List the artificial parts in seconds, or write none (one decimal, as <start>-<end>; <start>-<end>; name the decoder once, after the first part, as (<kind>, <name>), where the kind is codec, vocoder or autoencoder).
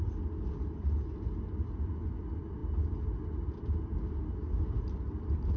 none